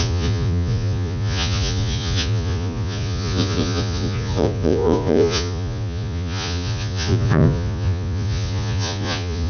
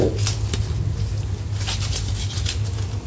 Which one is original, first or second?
second